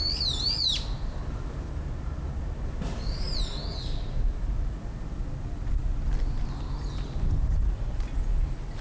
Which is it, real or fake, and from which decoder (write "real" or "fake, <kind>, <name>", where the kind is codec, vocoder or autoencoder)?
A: real